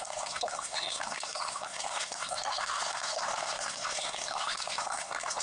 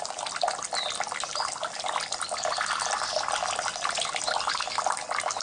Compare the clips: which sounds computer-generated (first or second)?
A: first